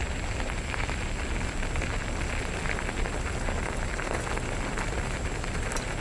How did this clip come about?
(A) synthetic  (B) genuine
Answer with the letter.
B